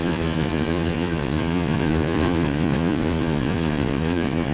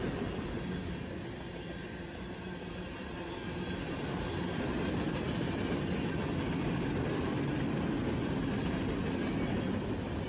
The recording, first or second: second